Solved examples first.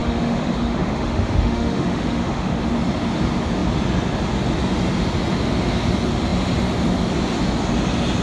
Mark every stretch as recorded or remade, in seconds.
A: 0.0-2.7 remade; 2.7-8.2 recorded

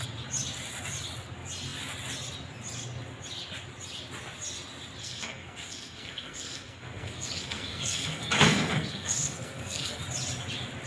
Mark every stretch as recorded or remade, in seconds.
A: 0.0-5.0 recorded; 5.0-10.0 remade; 10.0-10.9 recorded

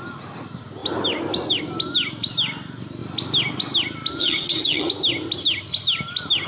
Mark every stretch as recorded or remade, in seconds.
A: 0.0-4.2 recorded; 4.2-4.9 remade; 4.9-6.5 recorded

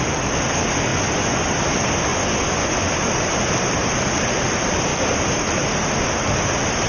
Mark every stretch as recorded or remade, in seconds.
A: 0.0-0.9 recorded; 0.9-1.5 remade; 1.5-2.1 recorded; 2.1-2.9 remade; 2.9-6.9 recorded

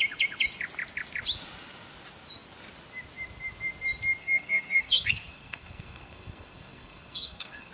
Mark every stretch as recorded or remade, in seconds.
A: 0.0-4.2 recorded; 4.2-7.7 remade

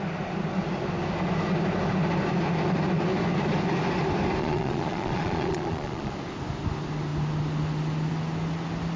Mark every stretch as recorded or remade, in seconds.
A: 0.0-4.4 recorded; 4.4-6.1 remade; 6.1-9.0 recorded

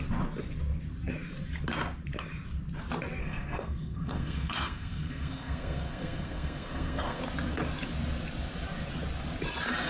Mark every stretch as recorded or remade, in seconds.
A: 0.0-3.2 recorded; 3.2-7.2 remade; 7.2-9.9 recorded

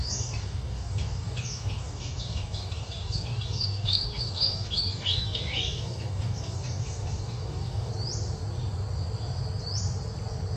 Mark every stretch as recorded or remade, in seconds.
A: 0.0-7.9 remade; 7.9-10.6 recorded